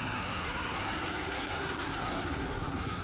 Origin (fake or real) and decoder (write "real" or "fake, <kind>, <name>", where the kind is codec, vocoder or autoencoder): fake, codec, SNAC